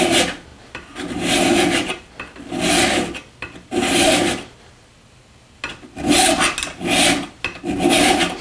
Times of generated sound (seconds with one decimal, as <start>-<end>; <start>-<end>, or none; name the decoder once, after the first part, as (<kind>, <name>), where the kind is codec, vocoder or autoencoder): none